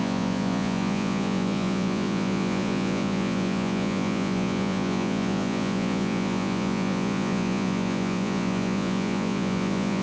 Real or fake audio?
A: fake